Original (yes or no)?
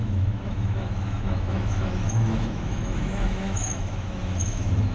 no